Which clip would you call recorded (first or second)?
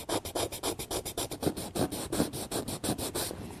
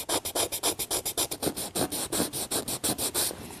second